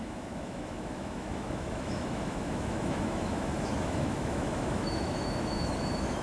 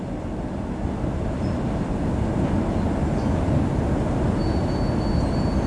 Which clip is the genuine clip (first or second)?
second